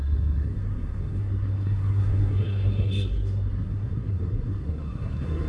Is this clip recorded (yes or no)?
no